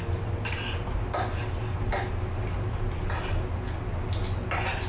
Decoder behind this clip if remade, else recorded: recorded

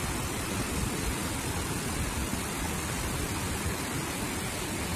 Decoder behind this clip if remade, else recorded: recorded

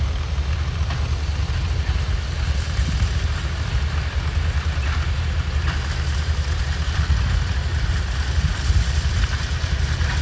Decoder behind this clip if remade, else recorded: recorded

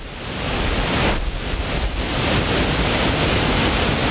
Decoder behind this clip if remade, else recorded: recorded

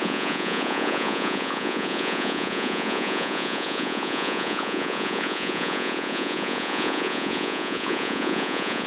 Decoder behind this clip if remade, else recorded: remade, vocoder, Vocos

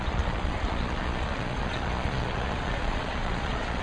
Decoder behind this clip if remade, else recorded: remade, vocoder, Vocos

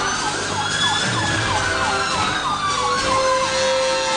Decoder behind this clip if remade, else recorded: recorded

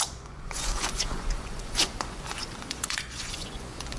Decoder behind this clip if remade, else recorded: remade, vocoder, Vocos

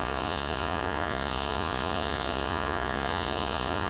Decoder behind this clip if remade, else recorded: remade, vocoder, Vocos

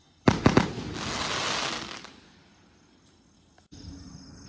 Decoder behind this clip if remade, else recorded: recorded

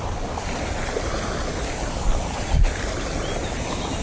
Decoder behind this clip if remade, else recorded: recorded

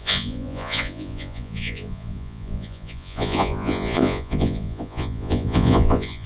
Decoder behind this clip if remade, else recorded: remade, vocoder, Vocos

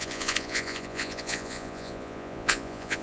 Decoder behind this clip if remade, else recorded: remade, vocoder, Vocos